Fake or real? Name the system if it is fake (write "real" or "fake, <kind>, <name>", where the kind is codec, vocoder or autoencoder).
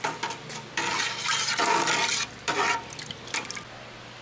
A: fake, vocoder, BigVGAN v2